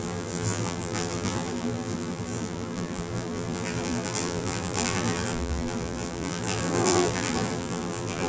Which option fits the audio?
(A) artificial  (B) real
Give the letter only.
A